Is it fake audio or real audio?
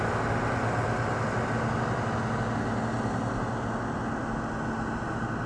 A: real